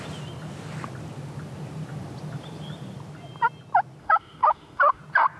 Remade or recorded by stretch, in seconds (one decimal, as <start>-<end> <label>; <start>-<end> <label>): 0.0-4.0 recorded; 4.0-5.0 remade; 5.0-5.4 recorded